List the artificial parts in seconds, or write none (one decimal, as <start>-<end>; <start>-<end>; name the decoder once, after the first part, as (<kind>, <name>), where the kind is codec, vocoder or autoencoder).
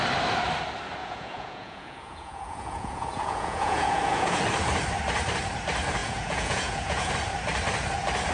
1.0-4.4 (vocoder, Vocos); 6.0-7.1